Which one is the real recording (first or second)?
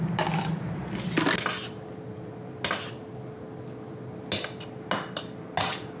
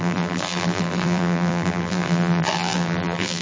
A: first